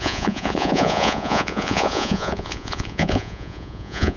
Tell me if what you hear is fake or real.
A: fake